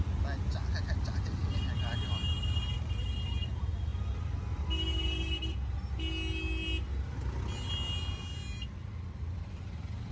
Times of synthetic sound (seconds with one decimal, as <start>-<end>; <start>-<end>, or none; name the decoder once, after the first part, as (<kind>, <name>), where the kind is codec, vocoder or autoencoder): 0.5-1.4 (vocoder, BigVGAN v2); 1.9-3.9; 9.0-10.1